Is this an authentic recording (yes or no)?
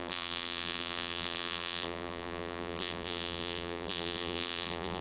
no